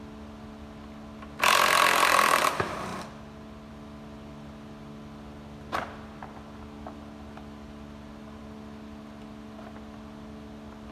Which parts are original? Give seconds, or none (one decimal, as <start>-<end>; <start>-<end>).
0.0-10.9

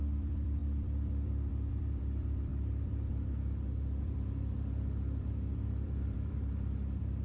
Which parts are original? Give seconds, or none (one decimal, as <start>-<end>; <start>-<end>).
none

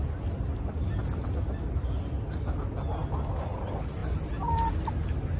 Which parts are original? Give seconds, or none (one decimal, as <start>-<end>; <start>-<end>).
0.0-5.4

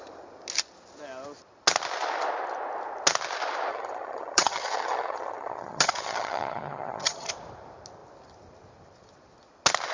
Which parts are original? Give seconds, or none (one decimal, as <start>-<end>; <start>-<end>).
0.0-3.7; 7.3-9.9